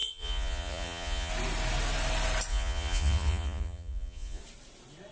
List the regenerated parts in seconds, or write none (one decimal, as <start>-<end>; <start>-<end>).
0.0-1.3; 2.5-4.4